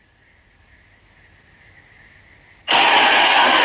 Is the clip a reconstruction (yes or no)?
no